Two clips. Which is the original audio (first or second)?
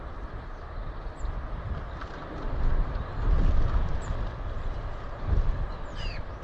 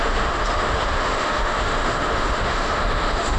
first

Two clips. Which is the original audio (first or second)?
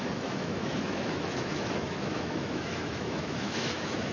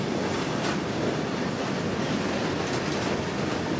second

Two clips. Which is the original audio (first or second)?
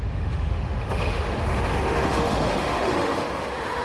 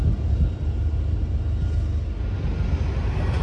second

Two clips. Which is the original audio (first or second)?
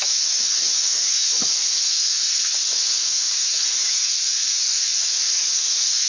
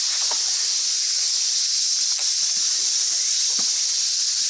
second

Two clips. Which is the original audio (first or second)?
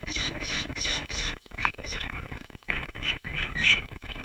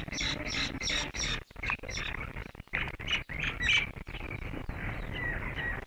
second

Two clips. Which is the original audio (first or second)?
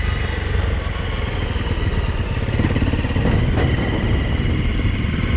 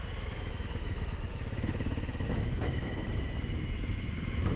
first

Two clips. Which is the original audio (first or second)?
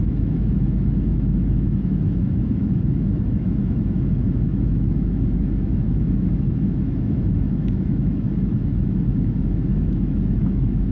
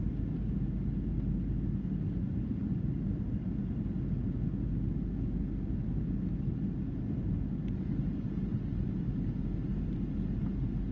second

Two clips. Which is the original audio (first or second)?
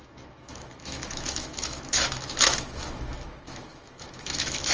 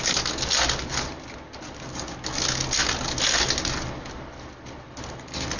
second